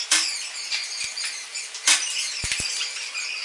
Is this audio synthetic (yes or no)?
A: no